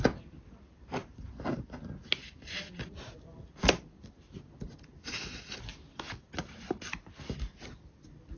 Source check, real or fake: real